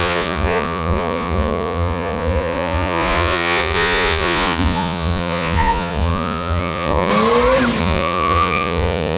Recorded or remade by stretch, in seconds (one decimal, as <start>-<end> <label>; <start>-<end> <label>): 0.0-7.1 remade; 7.1-7.8 recorded; 7.8-9.2 remade